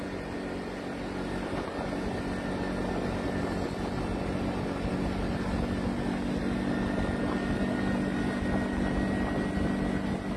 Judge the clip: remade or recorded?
recorded